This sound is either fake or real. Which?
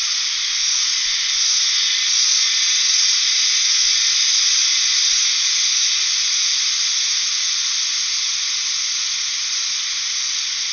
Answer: real